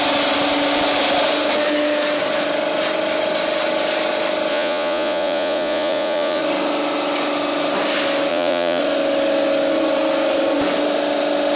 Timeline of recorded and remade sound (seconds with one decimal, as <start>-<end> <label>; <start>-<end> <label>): 0.0-4.5 recorded; 4.5-6.4 remade; 6.4-8.3 recorded; 8.3-8.8 remade; 8.8-11.6 recorded